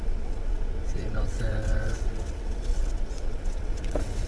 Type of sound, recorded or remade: remade